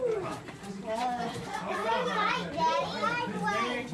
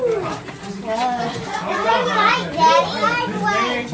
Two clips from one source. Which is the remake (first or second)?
first